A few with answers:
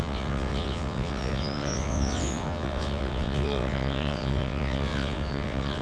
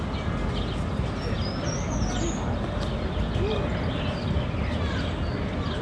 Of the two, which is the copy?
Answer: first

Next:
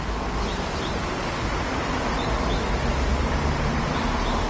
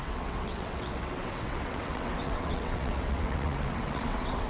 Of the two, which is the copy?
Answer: second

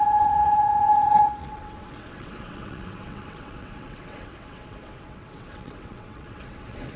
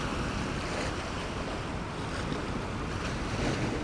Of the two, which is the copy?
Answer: first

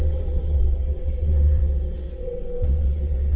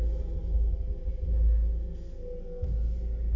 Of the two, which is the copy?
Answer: first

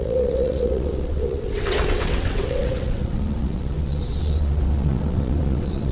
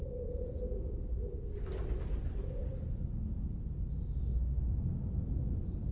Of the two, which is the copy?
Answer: first